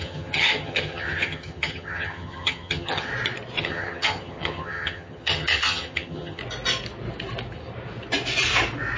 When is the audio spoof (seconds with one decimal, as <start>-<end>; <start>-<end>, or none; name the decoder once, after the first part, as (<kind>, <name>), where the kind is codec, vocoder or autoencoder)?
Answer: 0.0-3.1 (vocoder, HiFi-GAN); 3.6-6.4